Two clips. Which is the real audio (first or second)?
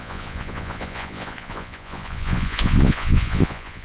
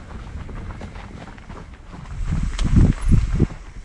second